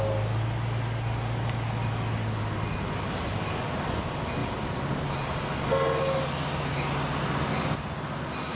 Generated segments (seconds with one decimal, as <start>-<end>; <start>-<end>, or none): none